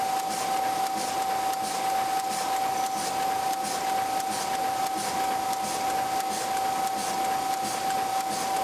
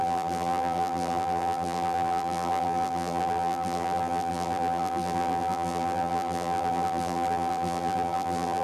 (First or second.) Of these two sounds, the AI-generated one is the second